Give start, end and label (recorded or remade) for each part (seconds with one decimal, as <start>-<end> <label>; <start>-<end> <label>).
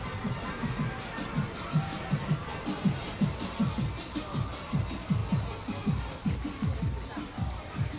0.0-8.0 recorded